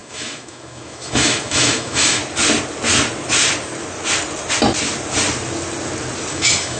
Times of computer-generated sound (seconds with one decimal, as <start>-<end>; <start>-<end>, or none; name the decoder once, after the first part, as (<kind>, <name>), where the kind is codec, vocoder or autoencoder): 0.0-2.2 (autoencoder, DAC-VAE); 6.3-6.8